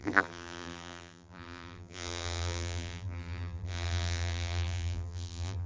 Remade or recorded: remade